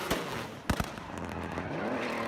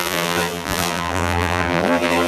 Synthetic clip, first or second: second